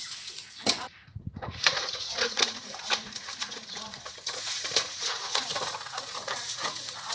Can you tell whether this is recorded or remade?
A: remade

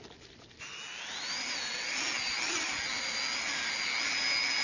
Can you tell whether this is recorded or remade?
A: recorded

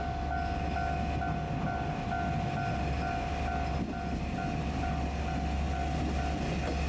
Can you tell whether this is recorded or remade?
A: recorded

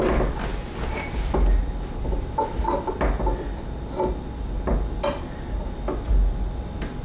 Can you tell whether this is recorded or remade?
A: recorded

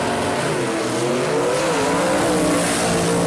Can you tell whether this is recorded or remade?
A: recorded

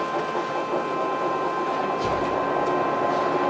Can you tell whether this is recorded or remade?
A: recorded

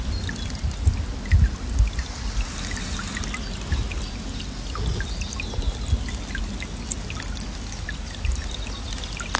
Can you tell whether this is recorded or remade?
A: recorded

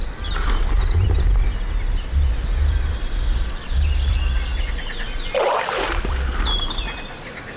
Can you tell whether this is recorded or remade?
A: recorded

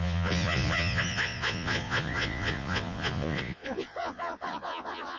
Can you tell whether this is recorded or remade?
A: remade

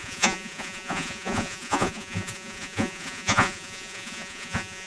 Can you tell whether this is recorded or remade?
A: remade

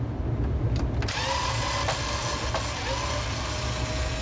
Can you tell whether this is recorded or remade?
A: recorded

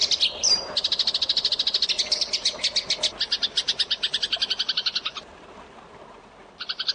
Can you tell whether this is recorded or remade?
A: recorded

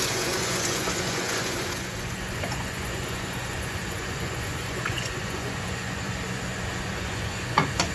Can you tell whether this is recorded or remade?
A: remade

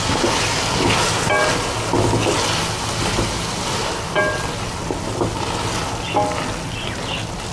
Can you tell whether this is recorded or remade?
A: recorded